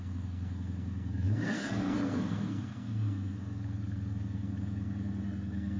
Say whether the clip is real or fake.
fake